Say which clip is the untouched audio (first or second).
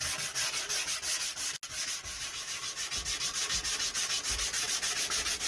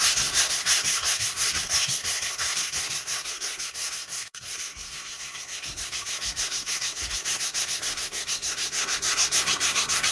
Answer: first